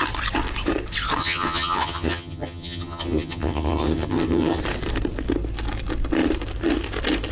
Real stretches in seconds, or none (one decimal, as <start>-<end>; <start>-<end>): 0.0-1.2; 4.6-7.3